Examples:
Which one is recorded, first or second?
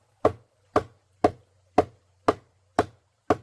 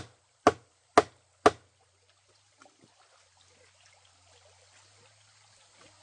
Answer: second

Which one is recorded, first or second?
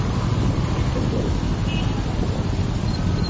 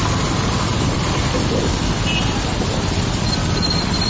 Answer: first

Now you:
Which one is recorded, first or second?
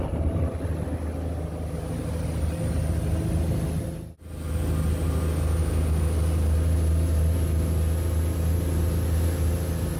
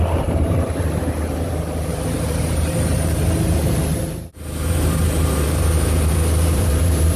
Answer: first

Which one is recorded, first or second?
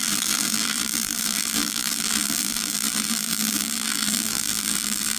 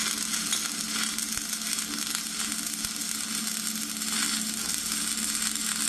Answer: second